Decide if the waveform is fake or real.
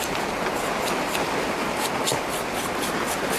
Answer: real